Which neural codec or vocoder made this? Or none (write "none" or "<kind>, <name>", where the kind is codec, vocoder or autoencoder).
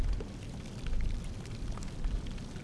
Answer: none